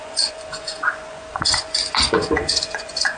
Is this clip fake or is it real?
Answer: fake